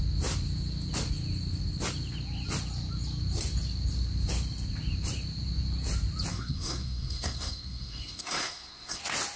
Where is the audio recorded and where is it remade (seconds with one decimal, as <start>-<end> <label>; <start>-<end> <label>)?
0.0-6.3 recorded; 6.3-9.0 remade; 9.0-9.4 recorded